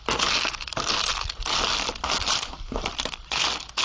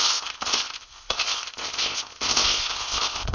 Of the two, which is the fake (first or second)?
second